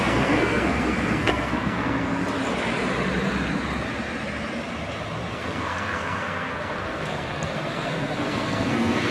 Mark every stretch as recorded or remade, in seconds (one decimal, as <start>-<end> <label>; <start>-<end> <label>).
0.0-2.2 remade; 2.2-5.3 recorded; 5.3-9.1 remade